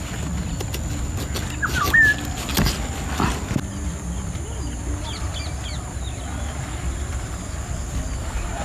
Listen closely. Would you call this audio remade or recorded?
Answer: recorded